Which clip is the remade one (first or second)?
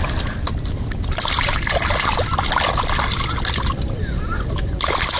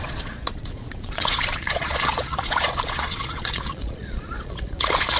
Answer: second